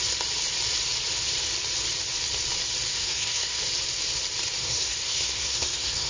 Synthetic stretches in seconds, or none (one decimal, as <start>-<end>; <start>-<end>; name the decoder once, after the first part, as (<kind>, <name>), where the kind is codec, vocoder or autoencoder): 2.9-3.6 (codec, SNAC); 4.6-6.1